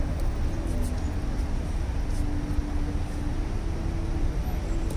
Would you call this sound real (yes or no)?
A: yes